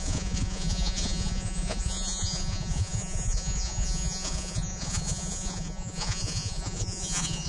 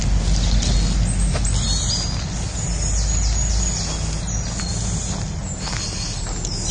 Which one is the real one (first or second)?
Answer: second